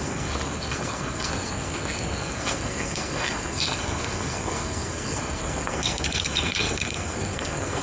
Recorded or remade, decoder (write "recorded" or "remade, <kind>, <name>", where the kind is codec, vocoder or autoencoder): remade, codec, SNAC